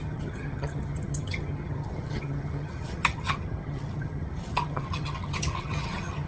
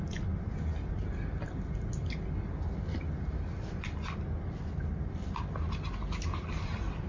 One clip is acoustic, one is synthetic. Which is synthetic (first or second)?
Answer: first